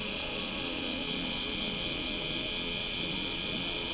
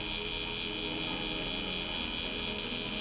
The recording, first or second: second